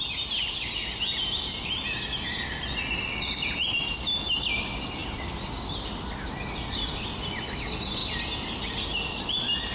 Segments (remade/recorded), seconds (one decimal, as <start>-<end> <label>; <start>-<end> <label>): 0.0-9.7 recorded